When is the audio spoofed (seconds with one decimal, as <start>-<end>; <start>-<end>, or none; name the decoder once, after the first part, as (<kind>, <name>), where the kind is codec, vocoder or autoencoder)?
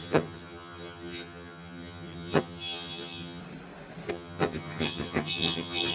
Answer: 0.0-3.4 (vocoder, HiFi-GAN); 4.1-5.9